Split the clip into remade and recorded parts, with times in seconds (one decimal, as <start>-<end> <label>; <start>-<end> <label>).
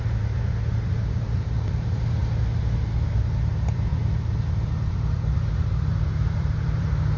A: 0.0-2.2 remade; 2.2-3.1 recorded; 3.1-3.9 remade; 3.9-4.9 recorded; 4.9-7.2 remade